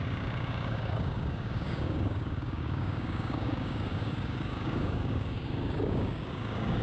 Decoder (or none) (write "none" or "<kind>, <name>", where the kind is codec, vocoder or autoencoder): codec, DAC